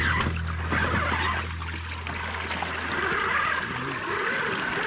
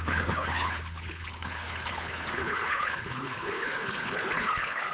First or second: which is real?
first